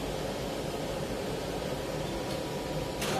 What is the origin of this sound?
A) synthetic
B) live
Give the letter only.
B